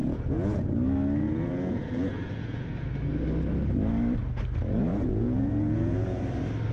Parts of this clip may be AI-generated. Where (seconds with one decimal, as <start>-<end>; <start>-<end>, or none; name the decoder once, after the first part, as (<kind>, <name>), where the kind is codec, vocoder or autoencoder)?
0.0-0.6 (vocoder, Vocos); 1.2-2.9; 4.9-6.2